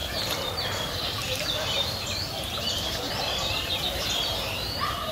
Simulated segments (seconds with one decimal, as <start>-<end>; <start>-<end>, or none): none